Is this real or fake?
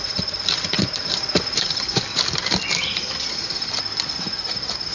fake